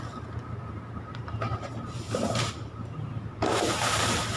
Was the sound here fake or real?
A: fake